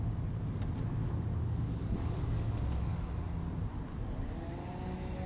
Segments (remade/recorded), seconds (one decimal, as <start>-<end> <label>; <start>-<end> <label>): 0.0-1.0 recorded; 1.0-3.1 remade; 3.1-5.3 recorded